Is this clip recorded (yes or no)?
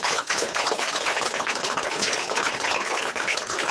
no